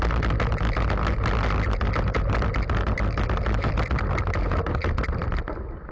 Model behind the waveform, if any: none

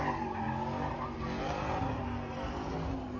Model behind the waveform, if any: none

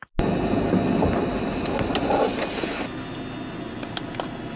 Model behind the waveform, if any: none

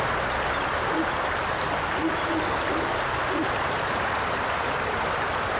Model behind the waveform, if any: none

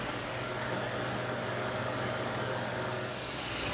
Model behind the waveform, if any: codec, DAC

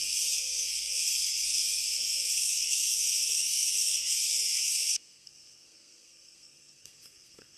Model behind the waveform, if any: codec, SNAC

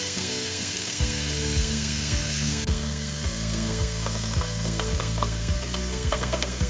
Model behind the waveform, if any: codec, SNAC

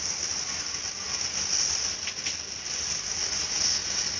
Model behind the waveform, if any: none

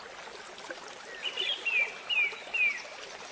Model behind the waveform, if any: none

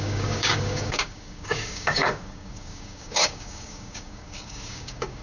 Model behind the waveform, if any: codec, DAC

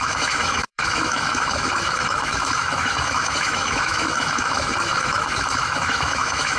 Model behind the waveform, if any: autoencoder, DAC-VAE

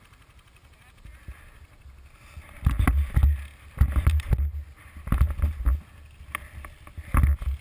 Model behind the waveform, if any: none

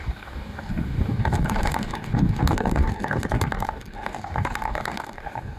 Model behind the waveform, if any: codec, DAC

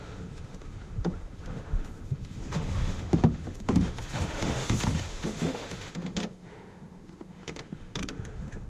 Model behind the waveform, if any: autoencoder, DAC-VAE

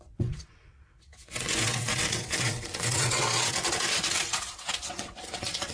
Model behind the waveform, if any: vocoder, WaveNeXt